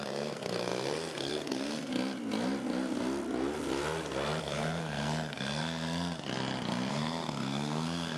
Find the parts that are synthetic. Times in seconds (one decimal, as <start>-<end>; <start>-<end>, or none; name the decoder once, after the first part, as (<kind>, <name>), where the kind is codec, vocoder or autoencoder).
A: 0.0-1.9 (codec, SNAC); 4.4-6.3; 6.9-8.2